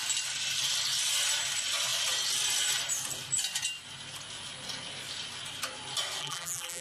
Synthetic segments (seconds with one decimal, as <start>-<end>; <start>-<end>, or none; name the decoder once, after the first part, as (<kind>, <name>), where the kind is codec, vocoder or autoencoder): 6.2-6.8 (vocoder, BigVGAN v2)